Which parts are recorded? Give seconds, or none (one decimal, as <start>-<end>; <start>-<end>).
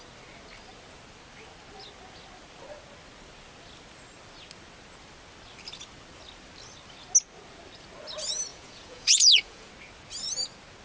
0.0-8.5; 9.7-10.8